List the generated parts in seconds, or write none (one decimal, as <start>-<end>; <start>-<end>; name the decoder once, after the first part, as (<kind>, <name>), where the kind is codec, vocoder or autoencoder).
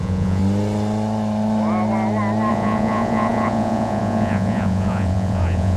0.0-0.4 (vocoder, Vocos); 2.5-5.8